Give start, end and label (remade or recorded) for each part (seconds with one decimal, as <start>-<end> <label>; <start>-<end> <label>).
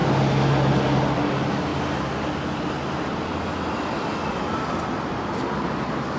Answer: 0.0-6.2 recorded